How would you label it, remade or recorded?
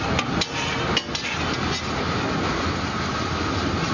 recorded